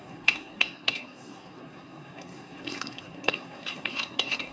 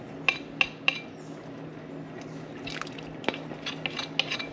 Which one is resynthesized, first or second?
first